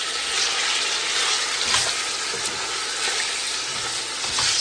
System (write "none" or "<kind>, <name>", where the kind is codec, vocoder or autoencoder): none